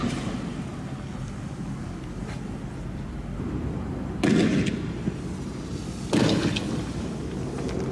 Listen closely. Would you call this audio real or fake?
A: real